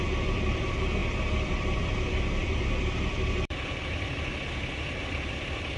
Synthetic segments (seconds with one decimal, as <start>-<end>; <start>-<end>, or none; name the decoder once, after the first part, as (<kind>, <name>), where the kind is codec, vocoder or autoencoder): 0.0-4.3 (vocoder, BigVGAN v2); 5.3-5.8